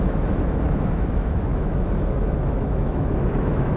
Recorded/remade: remade